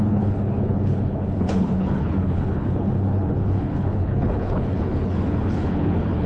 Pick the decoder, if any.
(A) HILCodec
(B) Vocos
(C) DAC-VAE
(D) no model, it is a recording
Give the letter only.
A